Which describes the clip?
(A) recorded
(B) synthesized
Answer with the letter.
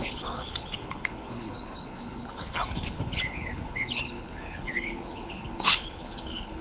B